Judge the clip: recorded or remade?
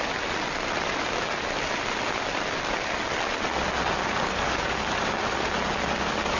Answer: recorded